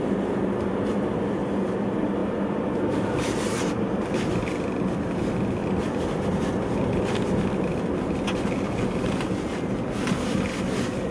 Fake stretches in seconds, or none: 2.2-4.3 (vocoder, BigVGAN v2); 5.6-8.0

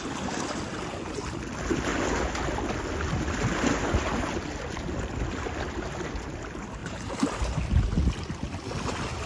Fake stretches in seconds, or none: 6.8-7.4 (vocoder, BigVGAN v2)

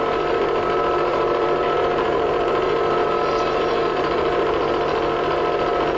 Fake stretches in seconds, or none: 1.1-4.7 (vocoder, BigVGAN v2)

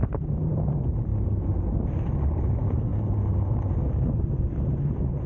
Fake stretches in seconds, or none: 0.0-1.1 (vocoder, BigVGAN v2); 2.5-2.9; 3.9-5.3

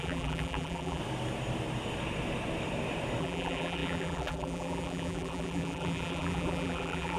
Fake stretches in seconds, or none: 0.0-1.0 (vocoder, BigVGAN v2); 3.2-7.2

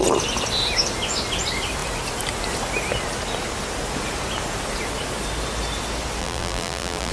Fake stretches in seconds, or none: 6.2-7.1 (vocoder, BigVGAN v2)

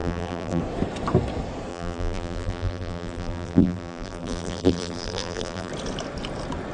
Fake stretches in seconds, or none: 0.0-0.6 (vocoder, BigVGAN v2); 1.7-5.7